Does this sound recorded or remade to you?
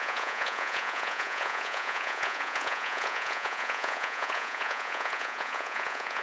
remade